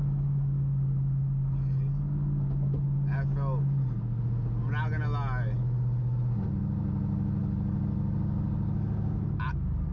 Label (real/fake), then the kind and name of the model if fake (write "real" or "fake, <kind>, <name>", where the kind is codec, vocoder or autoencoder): real